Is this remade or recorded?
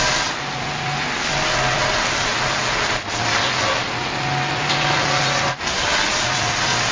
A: recorded